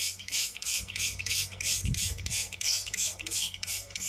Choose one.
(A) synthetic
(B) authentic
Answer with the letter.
A